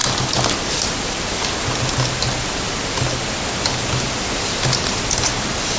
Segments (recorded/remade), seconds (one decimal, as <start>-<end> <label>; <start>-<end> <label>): 0.0-5.8 recorded